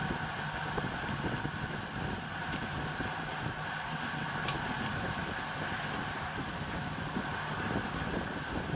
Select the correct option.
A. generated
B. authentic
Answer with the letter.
B